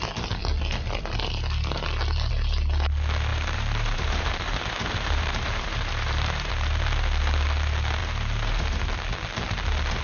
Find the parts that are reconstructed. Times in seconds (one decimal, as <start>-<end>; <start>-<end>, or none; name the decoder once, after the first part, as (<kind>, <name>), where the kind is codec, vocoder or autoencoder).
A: 3.3-6.5 (vocoder, BigVGAN v2); 8.0-8.8